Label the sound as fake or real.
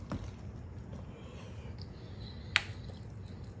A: real